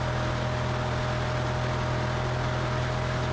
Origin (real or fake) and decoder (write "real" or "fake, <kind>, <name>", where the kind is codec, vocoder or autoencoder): real